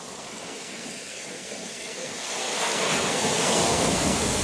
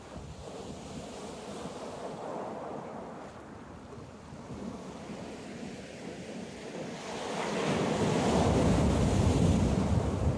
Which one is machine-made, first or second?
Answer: first